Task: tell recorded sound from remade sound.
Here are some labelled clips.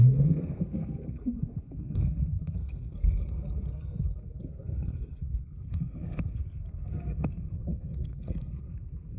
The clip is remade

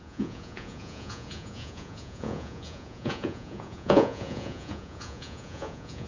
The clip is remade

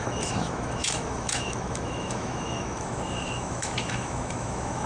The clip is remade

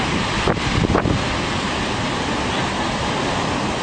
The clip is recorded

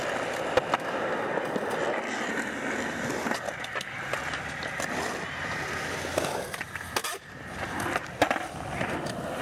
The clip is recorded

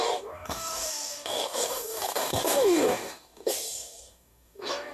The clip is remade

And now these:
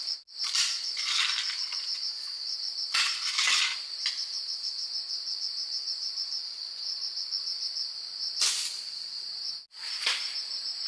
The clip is recorded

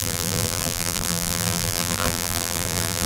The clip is remade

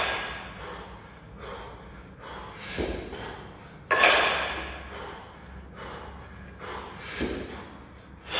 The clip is recorded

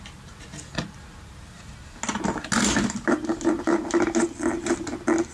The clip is recorded